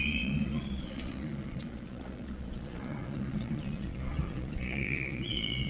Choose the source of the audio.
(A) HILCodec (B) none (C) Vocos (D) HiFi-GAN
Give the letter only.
C